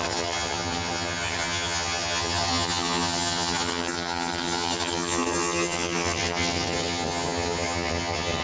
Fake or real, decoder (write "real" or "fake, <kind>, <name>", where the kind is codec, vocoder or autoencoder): fake, vocoder, HiFi-GAN